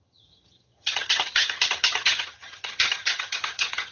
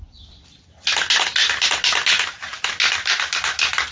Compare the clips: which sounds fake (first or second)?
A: first